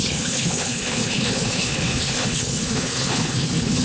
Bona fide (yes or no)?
no